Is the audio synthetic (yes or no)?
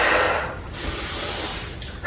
no